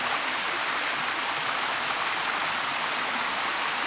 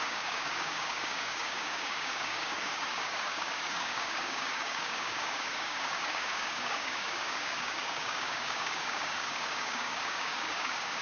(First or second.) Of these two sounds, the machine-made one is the second